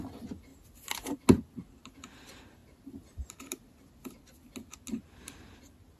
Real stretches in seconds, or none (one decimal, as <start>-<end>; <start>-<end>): 0.0-2.6; 3.8-6.0